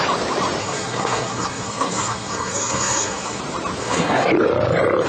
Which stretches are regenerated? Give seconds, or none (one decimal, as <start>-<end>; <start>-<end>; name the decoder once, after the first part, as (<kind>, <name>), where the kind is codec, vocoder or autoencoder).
0.6-3.4 (codec, SNAC); 3.8-4.3